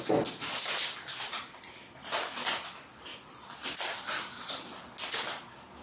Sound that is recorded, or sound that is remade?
recorded